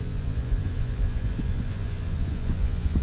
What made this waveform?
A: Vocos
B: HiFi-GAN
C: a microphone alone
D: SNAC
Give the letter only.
A